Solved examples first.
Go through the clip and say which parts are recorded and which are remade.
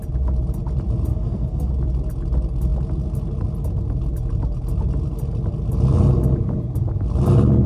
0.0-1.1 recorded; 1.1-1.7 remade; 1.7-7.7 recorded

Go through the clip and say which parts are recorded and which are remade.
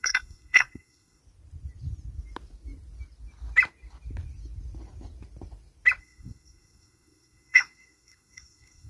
0.0-1.2 remade; 1.2-6.0 recorded; 6.0-8.9 remade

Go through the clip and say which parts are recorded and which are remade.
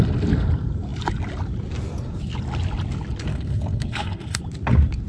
0.0-3.3 recorded; 3.3-4.4 remade; 4.4-5.1 recorded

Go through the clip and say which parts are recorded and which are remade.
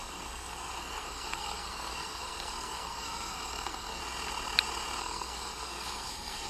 0.0-4.0 remade; 4.0-5.0 recorded; 5.0-6.5 remade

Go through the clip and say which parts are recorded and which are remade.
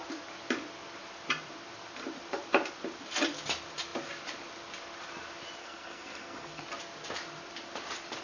0.0-5.6 recorded; 5.6-6.6 remade; 6.6-8.2 recorded